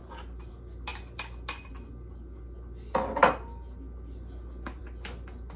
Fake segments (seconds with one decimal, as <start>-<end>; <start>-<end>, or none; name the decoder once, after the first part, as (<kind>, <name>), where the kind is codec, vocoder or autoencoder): none